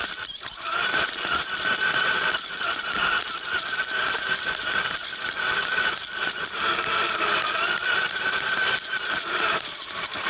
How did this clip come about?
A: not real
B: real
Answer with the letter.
A